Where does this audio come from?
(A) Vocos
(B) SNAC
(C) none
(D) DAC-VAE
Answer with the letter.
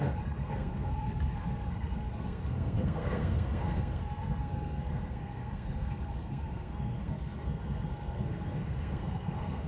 B